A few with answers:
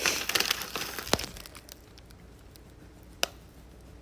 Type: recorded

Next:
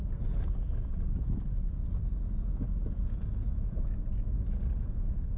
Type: remade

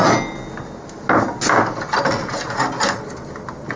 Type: recorded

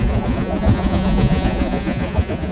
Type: remade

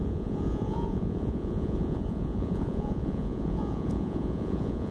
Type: remade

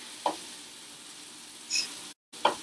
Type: recorded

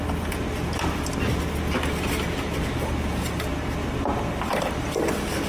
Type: recorded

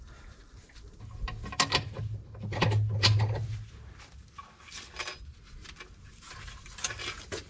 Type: recorded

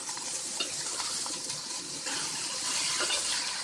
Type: recorded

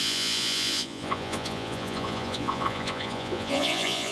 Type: remade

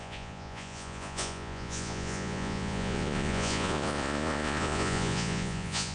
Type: remade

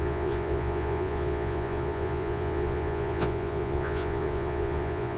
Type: remade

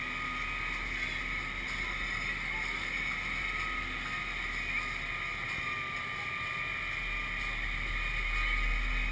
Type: recorded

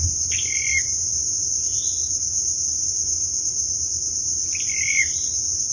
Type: recorded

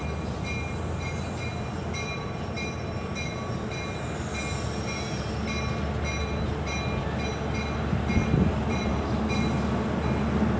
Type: recorded